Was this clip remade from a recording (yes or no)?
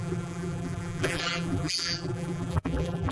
yes